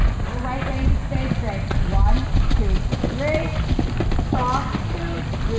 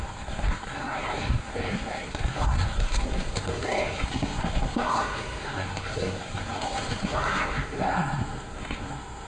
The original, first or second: first